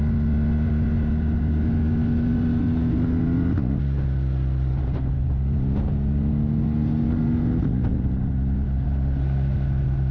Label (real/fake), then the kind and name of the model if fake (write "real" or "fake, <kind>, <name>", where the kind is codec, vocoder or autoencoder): real